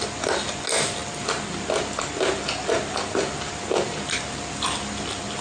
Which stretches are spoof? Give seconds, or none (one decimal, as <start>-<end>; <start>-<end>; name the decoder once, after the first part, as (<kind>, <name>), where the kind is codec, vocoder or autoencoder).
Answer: none